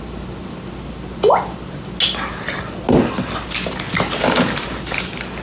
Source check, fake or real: real